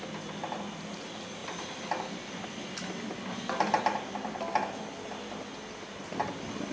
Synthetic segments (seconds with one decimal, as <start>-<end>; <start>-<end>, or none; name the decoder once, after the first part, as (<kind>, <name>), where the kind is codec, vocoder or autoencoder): none